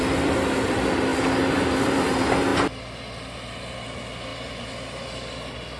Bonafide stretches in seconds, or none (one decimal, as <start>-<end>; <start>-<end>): 0.0-5.8